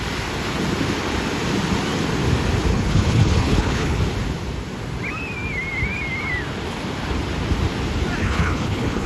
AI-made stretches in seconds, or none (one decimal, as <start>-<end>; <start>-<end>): 2.7-4.0; 8.2-9.1